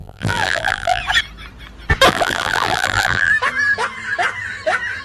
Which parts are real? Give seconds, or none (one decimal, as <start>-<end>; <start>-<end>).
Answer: 1.0-2.1; 3.3-5.0